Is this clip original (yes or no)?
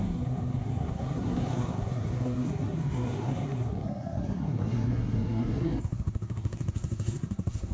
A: no